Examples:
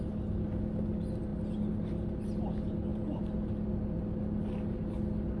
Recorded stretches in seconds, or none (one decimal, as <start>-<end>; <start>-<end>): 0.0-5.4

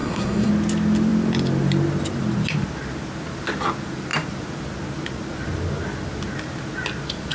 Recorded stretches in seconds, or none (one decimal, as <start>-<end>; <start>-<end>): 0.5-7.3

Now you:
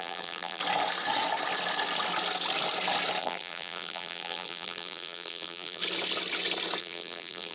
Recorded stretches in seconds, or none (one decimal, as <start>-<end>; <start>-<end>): 0.6-3.2; 5.8-6.8

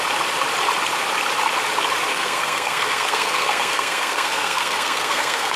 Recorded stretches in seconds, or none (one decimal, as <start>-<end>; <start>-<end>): 0.0-2.1

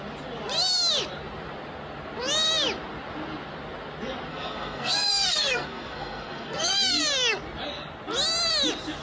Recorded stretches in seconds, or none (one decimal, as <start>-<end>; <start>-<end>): 0.0-4.3; 7.0-9.0

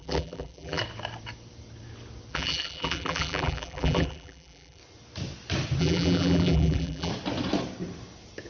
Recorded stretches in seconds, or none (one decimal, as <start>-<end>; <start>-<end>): 0.8-2.3; 4.8-5.8; 7.1-8.5

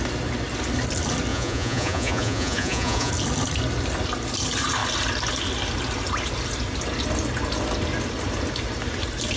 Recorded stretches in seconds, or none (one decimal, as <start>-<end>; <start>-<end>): 0.0-1.3; 3.1-9.4

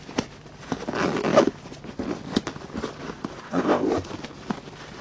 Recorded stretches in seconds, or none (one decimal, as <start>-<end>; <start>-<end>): 0.0-3.4; 3.9-5.0